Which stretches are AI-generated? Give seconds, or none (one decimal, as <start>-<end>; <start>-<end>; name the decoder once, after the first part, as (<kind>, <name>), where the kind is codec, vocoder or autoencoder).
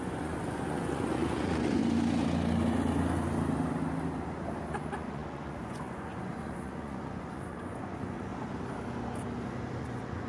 0.0-1.8 (vocoder, Vocos); 4.7-8.3; 9.8-10.3